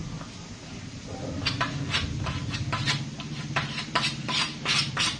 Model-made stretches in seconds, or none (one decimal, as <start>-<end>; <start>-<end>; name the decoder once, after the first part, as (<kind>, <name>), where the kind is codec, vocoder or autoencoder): 3.1-5.2 (vocoder, BigVGAN v2)